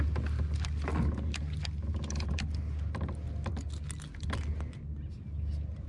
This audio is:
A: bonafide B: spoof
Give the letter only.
A